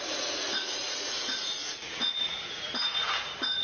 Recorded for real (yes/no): no